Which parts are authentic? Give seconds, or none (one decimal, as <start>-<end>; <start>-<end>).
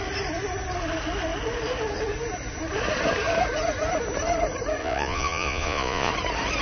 0.0-4.8; 6.1-6.6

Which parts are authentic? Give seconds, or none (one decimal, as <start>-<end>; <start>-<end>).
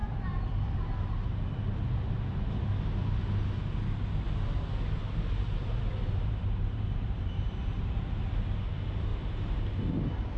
0.5-5.0; 8.0-9.1; 9.6-10.4